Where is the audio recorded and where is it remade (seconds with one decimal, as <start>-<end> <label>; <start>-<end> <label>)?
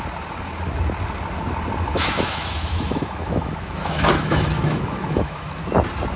0.0-1.9 recorded; 1.9-5.6 remade; 5.6-6.2 recorded